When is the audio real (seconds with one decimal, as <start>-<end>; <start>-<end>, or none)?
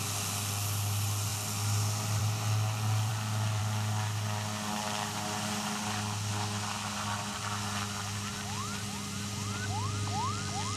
0.0-10.8